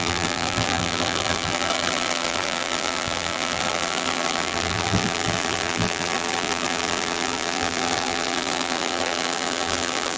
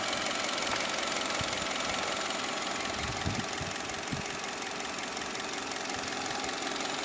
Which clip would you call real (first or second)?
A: second